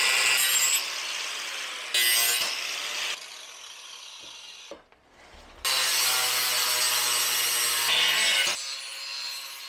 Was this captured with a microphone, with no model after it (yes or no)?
yes